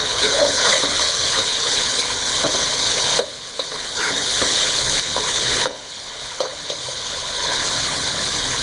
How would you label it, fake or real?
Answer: fake